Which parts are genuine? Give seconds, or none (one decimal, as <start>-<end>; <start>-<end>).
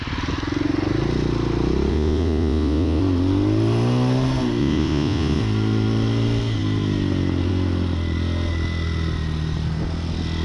0.0-1.9; 3.0-4.6; 5.4-10.4